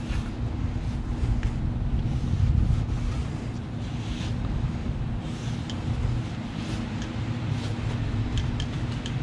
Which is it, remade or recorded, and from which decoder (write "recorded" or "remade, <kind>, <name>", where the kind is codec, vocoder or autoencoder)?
recorded